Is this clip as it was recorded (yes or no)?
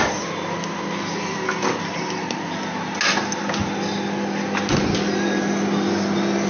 yes